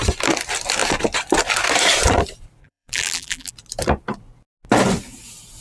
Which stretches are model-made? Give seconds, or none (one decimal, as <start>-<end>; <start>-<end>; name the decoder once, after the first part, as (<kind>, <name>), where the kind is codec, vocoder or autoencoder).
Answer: 2.6-3.5 (vocoder, BigVGAN v2)